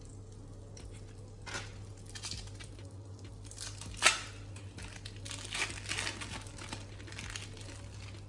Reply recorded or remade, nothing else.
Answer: recorded